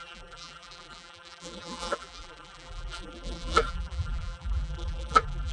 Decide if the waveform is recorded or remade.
remade